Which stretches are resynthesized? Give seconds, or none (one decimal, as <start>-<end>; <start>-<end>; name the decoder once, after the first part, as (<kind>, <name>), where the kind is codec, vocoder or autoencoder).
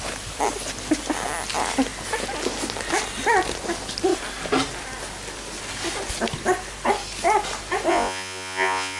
7.9-9.0 (vocoder, Vocos)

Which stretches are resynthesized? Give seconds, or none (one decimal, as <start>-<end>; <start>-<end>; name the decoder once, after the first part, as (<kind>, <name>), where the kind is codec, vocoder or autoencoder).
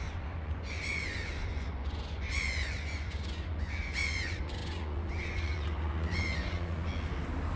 0.0-6.9 (vocoder, Vocos)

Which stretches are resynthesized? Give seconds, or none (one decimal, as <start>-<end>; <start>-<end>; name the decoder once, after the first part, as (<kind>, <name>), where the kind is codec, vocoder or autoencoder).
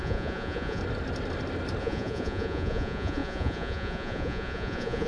0.0-0.8 (vocoder, Vocos); 1.8-5.1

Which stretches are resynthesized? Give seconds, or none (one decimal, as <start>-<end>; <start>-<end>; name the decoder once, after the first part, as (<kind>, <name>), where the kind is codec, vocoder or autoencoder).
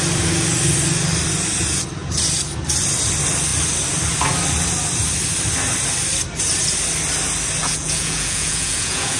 7.6-9.2 (vocoder, Vocos)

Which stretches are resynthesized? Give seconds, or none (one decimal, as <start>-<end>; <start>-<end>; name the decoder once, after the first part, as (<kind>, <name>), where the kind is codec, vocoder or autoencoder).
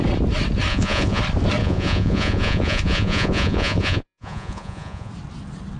0.7-1.2 (vocoder, Vocos); 1.6-5.1